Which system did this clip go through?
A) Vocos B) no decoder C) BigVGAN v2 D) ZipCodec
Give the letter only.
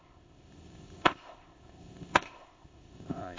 D